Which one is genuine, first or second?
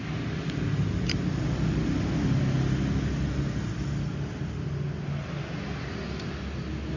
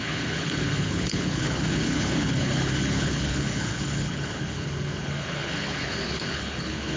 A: first